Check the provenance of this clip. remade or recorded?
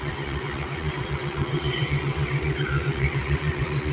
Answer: remade